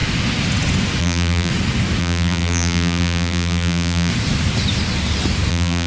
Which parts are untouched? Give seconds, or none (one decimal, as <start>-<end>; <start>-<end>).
0.0-1.0; 1.5-2.0; 4.1-5.5